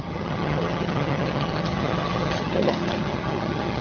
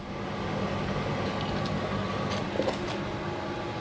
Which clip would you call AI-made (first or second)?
first